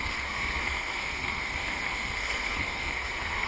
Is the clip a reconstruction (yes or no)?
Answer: yes